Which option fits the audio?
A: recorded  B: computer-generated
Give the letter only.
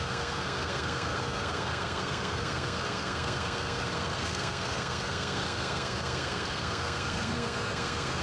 B